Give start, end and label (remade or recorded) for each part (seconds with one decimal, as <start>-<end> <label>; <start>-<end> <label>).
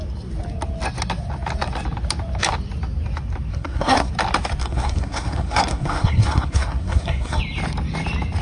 0.0-3.5 recorded; 3.5-4.1 remade; 4.1-4.6 recorded; 4.6-7.4 remade; 7.4-8.4 recorded